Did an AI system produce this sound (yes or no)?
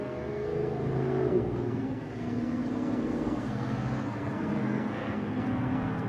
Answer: yes